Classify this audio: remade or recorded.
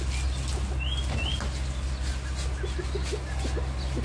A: recorded